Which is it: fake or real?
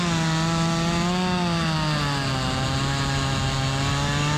real